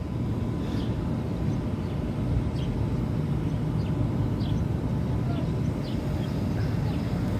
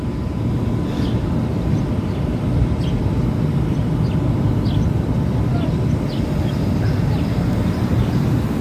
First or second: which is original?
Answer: first